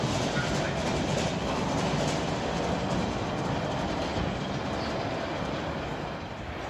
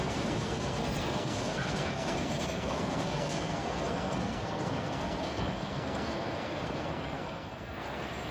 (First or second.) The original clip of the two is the first